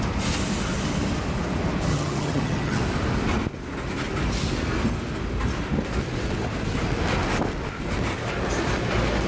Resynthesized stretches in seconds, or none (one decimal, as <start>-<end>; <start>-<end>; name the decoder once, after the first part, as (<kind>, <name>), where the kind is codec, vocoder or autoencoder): 1.9-2.8 (vocoder, HiFi-GAN)